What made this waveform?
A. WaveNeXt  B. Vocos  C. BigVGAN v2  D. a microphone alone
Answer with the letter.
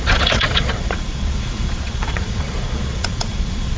B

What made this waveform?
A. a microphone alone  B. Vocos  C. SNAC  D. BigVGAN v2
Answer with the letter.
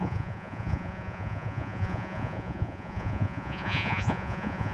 B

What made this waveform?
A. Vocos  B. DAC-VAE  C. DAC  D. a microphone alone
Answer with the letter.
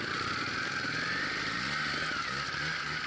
D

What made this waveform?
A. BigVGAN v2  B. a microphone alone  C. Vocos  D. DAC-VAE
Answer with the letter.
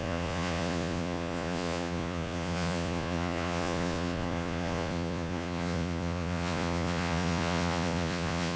C